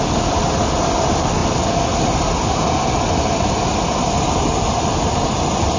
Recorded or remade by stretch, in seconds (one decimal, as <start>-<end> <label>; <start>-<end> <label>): 0.0-5.8 recorded